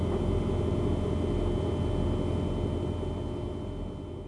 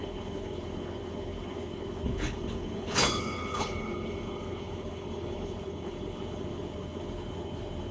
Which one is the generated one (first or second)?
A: second